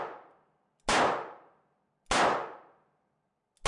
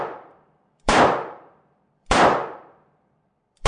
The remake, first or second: second